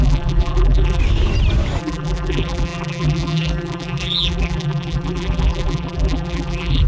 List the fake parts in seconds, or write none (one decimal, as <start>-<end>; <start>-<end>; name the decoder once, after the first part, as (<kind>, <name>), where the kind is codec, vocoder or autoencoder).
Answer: 0.0-1.0 (vocoder, BigVGAN v2); 1.8-6.9